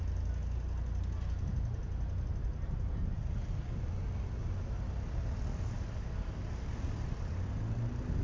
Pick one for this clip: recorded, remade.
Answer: recorded